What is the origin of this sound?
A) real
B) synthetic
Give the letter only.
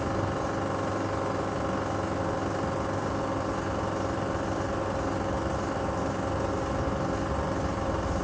A